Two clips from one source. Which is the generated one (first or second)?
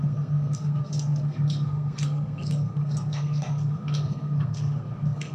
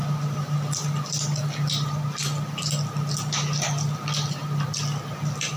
first